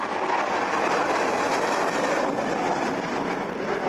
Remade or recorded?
recorded